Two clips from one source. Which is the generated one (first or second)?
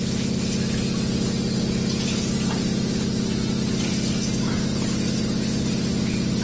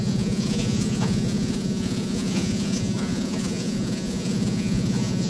second